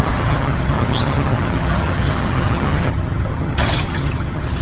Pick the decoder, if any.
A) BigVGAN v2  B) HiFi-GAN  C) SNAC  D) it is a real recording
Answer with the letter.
B